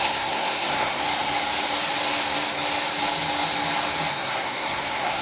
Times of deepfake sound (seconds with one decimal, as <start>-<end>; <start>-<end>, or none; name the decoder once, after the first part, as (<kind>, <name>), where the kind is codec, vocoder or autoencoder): 0.0-1.0 (codec, SNAC); 4.1-5.2